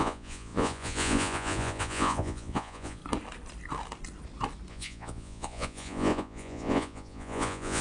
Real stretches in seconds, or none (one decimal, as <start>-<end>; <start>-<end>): 3.0-4.7